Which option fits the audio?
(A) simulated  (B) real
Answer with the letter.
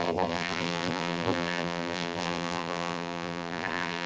A